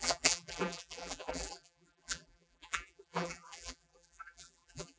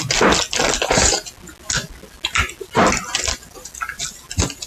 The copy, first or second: first